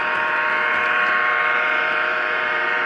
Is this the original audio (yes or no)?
no